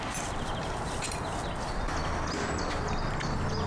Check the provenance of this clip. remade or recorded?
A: recorded